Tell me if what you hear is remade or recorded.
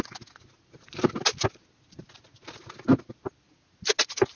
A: recorded